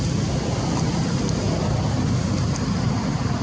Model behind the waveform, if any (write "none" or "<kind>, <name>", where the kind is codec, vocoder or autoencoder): vocoder, BigVGAN v2